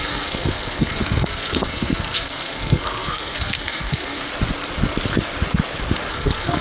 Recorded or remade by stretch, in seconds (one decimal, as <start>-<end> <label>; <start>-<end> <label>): 0.0-4.3 remade; 4.3-6.1 recorded; 6.1-6.6 remade